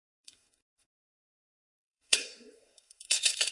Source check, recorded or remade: remade